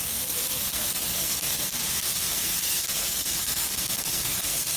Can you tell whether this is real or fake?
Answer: fake